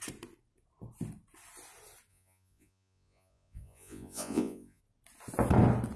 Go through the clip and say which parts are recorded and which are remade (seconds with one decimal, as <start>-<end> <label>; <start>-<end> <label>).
0.0-2.1 recorded; 2.1-4.8 remade; 4.8-6.0 recorded